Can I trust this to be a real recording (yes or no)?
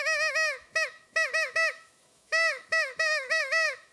no